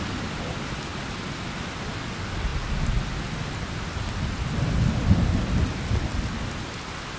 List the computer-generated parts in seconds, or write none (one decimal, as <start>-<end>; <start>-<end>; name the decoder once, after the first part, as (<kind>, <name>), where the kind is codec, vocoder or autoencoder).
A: none